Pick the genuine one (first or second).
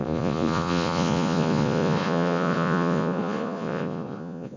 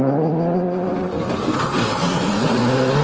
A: second